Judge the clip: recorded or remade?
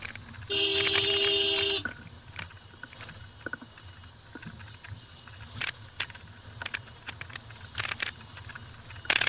recorded